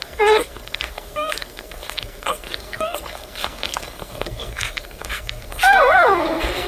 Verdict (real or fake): fake